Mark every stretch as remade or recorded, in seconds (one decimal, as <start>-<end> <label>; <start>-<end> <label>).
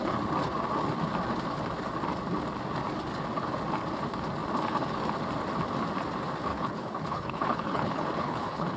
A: 0.0-6.5 recorded; 6.5-8.8 remade